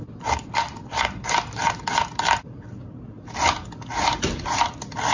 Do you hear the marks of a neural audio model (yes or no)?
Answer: no